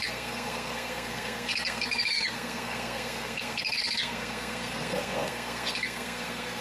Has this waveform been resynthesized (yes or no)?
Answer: yes